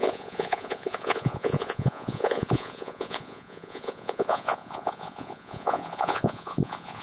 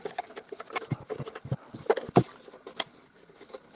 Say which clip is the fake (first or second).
first